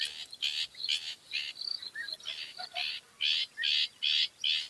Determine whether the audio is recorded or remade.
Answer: recorded